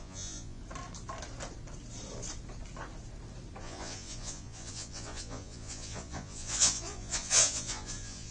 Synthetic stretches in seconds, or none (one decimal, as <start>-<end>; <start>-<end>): 0.0-0.6; 3.6-8.3